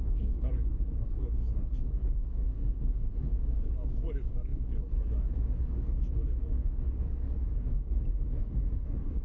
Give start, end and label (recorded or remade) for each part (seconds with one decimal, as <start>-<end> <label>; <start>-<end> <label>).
0.0-9.2 remade

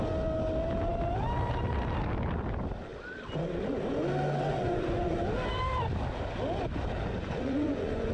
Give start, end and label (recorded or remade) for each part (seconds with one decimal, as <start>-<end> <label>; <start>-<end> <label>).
0.0-4.5 recorded; 4.5-5.2 remade; 5.2-7.1 recorded; 7.1-8.1 remade

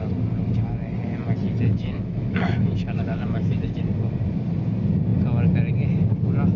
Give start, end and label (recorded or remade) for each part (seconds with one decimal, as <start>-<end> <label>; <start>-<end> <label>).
0.0-1.7 recorded; 1.7-3.8 remade; 3.8-6.6 recorded

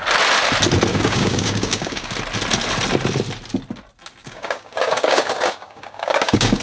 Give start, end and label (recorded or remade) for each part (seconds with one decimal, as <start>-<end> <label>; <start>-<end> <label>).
0.0-0.9 recorded; 0.9-2.1 remade; 2.1-4.2 recorded; 4.2-6.6 remade

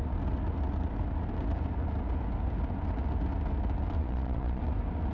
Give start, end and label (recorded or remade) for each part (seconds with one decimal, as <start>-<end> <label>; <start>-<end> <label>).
0.0-4.0 recorded; 4.0-4.6 remade; 4.6-5.1 recorded